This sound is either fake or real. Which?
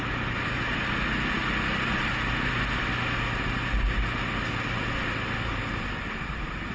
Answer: real